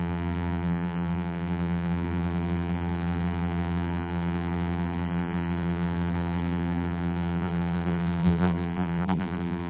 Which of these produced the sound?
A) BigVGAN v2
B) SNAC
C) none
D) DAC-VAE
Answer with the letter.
A